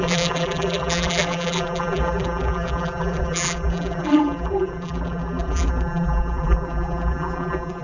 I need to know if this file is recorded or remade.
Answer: remade